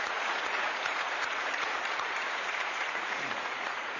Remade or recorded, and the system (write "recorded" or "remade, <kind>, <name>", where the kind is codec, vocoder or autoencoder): remade, vocoder, Vocos